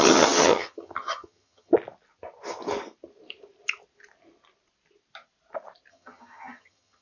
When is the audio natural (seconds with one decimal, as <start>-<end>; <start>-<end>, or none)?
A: 1.7-5.9